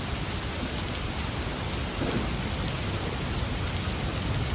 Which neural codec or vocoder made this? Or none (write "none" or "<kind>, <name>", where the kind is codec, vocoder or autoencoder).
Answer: none